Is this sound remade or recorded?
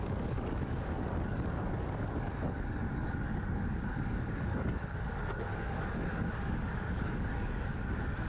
remade